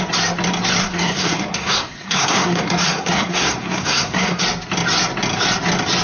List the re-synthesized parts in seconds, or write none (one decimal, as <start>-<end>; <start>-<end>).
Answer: 0.8-4.4